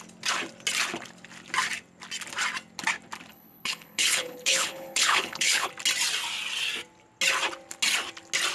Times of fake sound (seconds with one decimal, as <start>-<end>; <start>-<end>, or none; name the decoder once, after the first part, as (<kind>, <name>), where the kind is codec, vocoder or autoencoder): 3.3-5.7 (codec, HILCodec)